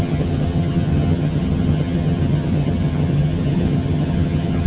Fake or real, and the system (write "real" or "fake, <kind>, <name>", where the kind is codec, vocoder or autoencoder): fake, vocoder, HiFi-GAN